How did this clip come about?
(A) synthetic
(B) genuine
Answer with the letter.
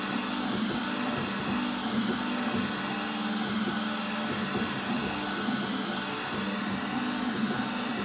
B